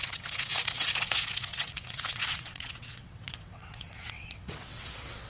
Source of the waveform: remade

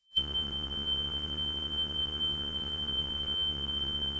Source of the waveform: remade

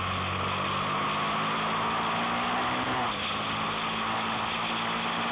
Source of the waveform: recorded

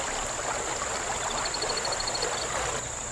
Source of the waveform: recorded